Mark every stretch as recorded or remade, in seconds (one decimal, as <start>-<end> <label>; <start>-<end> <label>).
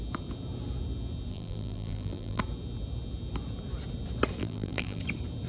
0.0-1.3 recorded; 1.3-2.4 remade; 2.4-4.4 recorded; 4.4-5.0 remade; 5.0-5.5 recorded